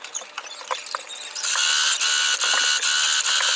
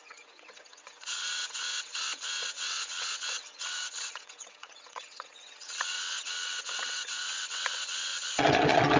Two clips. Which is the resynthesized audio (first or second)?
second